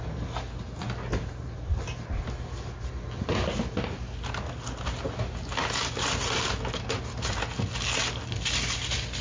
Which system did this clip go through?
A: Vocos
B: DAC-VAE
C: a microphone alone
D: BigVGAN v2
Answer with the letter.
C